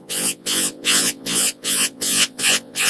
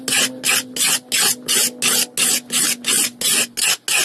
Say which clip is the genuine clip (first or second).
second